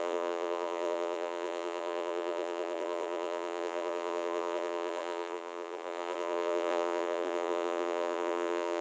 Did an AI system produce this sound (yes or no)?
yes